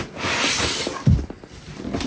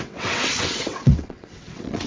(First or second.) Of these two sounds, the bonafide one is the first